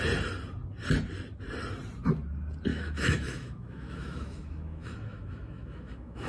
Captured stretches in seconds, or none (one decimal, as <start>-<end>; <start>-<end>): 0.0-2.7